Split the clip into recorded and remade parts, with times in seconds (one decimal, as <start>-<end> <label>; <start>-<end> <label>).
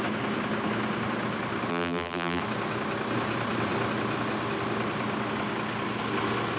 0.0-1.7 recorded; 1.7-2.4 remade; 2.4-6.6 recorded